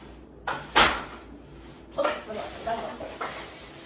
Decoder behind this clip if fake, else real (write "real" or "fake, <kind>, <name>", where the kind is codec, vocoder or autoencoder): real